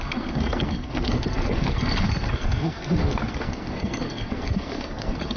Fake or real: fake